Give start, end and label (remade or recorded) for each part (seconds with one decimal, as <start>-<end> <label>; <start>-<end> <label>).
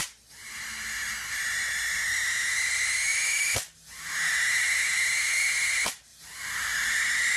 0.0-6.1 recorded; 6.1-7.0 remade; 7.0-7.4 recorded